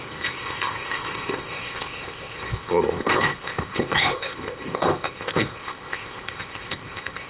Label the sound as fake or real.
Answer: fake